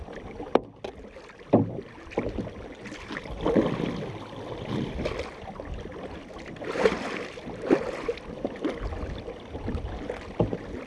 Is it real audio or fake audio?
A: real